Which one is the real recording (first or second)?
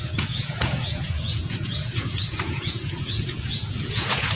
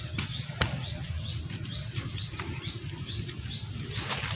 second